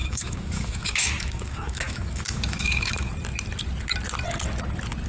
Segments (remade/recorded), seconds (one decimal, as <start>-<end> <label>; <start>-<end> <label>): 0.0-3.1 remade; 3.1-5.1 recorded